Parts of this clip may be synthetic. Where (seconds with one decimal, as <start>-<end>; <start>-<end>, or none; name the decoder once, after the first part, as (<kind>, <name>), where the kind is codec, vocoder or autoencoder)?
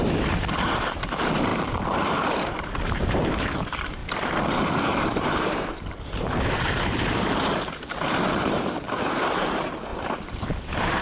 0.0-4.0 (vocoder, BigVGAN v2); 4.5-9.9; 10.5-11.0